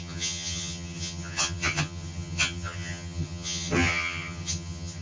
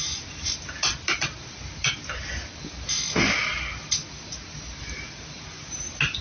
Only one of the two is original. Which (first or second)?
second